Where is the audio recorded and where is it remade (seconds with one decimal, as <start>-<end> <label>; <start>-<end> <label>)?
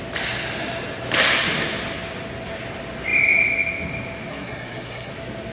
0.0-4.3 recorded; 4.3-5.1 remade; 5.1-5.5 recorded